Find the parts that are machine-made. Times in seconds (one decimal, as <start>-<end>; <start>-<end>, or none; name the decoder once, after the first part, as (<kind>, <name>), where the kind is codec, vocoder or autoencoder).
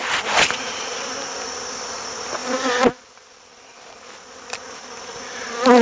none